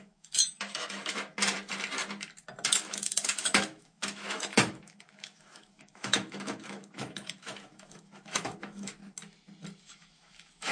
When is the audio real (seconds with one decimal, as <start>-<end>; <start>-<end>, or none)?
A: 1.3-2.7; 9.0-9.8